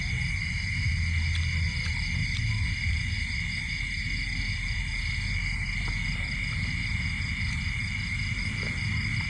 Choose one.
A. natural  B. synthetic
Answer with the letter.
A